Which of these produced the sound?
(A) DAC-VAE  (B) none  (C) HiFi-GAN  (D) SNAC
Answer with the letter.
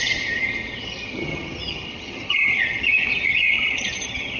C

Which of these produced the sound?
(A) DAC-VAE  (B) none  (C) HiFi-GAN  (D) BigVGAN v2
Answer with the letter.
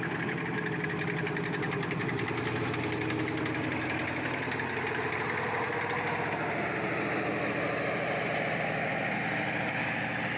B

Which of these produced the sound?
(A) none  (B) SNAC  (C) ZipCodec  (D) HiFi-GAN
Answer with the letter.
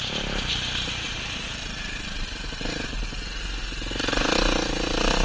A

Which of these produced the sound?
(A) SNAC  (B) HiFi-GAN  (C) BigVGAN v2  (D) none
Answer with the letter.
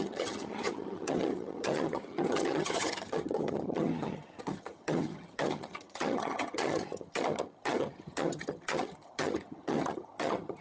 B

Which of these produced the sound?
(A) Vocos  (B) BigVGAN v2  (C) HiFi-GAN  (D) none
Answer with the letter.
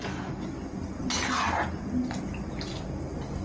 D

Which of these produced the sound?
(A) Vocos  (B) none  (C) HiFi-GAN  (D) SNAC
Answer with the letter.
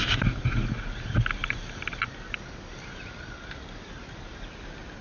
B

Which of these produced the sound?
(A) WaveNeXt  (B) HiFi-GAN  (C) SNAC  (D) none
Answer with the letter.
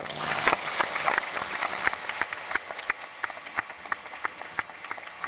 B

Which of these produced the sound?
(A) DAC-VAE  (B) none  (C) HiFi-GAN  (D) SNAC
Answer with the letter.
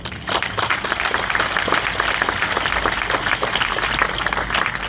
B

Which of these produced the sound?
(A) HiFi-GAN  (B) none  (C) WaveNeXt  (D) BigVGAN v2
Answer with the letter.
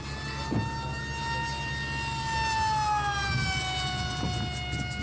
B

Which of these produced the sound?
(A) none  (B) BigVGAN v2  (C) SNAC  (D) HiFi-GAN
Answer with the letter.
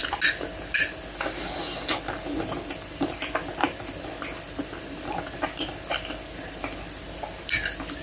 A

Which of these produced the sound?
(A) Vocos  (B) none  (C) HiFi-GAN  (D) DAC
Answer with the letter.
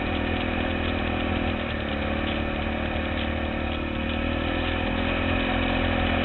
B